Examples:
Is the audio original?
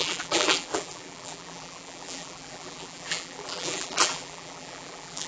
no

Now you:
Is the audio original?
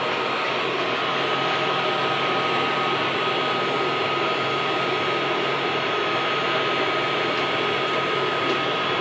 yes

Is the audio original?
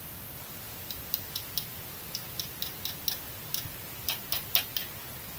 yes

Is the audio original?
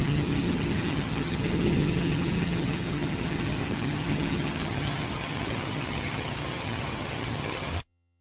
no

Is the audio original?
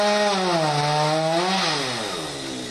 yes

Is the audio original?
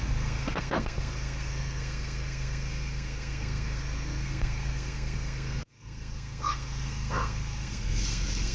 no